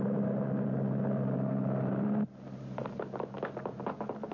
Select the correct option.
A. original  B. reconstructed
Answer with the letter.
A